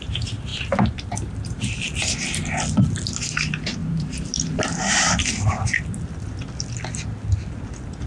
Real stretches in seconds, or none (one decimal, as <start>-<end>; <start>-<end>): 0.0-3.8; 5.2-8.1

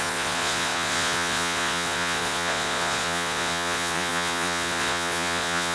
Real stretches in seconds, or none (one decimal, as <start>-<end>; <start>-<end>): none

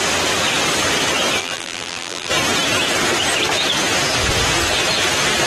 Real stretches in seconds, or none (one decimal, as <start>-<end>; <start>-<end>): 0.0-1.4; 2.3-5.5

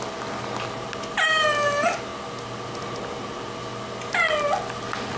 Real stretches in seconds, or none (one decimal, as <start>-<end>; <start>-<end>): 0.0-5.2

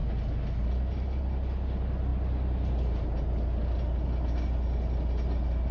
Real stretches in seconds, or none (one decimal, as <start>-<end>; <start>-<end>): 0.0-5.7

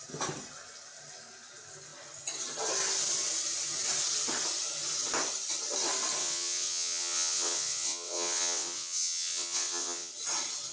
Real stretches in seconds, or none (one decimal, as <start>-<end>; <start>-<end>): 0.0-6.2; 10.1-10.7

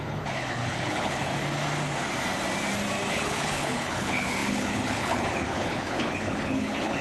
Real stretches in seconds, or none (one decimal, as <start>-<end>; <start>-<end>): 1.3-3.1